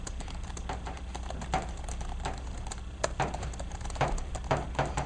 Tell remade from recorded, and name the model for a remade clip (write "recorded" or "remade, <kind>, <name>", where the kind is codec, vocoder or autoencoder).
recorded